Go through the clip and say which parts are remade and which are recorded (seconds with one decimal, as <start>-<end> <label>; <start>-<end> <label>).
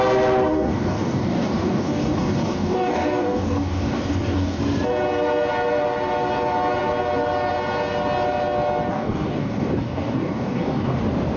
0.0-0.5 recorded; 0.5-4.6 remade; 4.6-8.9 recorded; 8.9-11.0 remade; 11.0-11.4 recorded